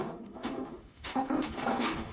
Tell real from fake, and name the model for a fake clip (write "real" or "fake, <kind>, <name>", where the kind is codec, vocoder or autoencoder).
fake, autoencoder, DAC-VAE